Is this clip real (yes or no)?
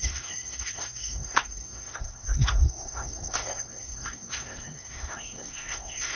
no